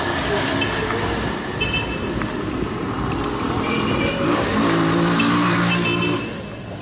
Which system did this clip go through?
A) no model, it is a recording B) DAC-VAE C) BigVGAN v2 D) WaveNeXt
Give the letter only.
A